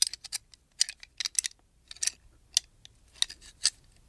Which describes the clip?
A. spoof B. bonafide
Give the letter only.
B